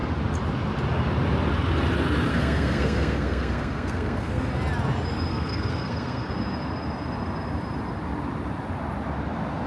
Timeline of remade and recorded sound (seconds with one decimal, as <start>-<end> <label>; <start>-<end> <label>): 0.0-2.3 recorded; 2.3-4.5 remade; 4.5-5.3 recorded; 5.3-6.3 remade; 6.3-9.7 recorded